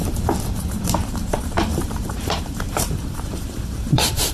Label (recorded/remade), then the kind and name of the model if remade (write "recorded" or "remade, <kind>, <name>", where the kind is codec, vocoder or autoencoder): remade, vocoder, BigVGAN v2